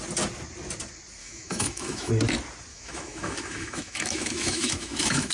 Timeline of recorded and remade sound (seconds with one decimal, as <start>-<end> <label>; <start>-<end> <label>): 0.0-1.2 recorded; 1.2-2.1 remade; 2.1-2.7 recorded; 2.7-5.3 remade